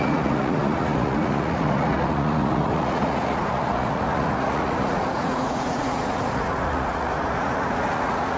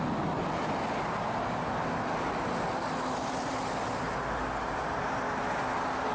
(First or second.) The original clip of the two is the second